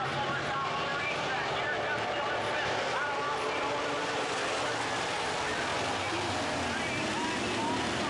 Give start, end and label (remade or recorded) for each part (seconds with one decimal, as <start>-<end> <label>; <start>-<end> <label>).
0.0-8.1 recorded